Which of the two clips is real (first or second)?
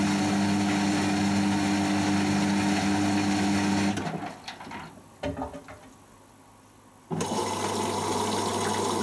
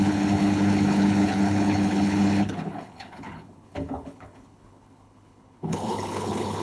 first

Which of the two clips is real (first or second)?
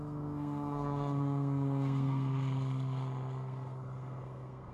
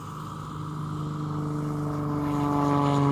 second